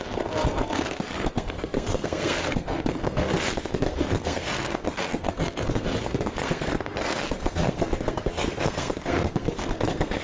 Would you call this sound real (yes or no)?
no